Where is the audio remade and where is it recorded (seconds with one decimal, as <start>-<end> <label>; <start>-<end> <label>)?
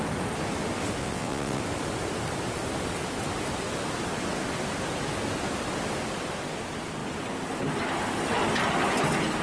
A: 0.0-1.0 recorded; 1.0-1.6 remade; 1.6-9.4 recorded